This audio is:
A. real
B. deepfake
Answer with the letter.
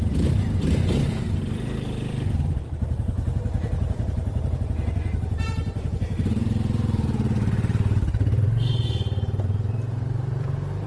B